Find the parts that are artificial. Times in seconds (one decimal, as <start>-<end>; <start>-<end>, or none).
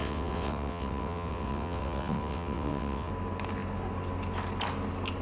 0.0-3.1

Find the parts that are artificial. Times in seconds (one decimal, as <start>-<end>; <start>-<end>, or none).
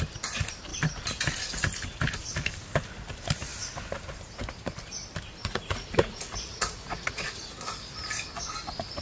5.4-7.5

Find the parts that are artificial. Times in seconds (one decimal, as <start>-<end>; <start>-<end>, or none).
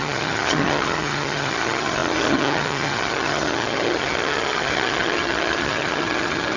0.0-6.6